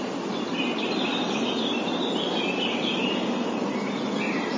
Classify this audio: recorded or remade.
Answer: recorded